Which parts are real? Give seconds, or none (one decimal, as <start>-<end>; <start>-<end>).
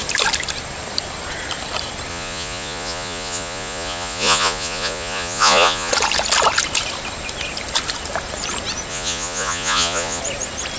0.0-2.1; 5.9-8.9; 10.2-10.8